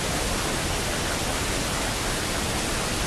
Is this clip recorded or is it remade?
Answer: recorded